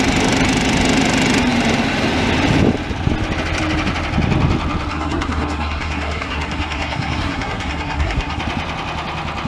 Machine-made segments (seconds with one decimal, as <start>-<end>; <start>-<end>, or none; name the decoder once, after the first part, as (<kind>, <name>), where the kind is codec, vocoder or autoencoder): 4.9-8.4 (codec, SNAC)